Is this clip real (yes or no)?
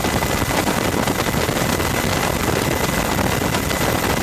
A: yes